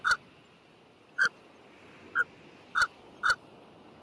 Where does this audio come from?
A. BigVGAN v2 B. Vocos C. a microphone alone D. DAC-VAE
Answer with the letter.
C